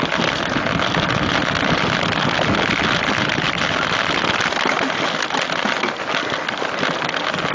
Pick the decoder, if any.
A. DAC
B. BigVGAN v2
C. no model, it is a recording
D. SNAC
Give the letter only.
C